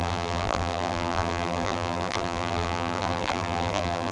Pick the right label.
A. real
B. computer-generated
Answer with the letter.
B